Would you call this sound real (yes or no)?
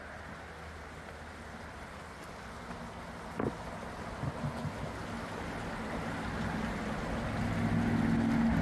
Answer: yes